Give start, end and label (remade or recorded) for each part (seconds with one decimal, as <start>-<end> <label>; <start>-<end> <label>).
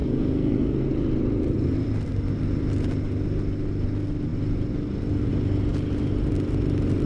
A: 0.0-0.9 remade; 0.9-7.1 recorded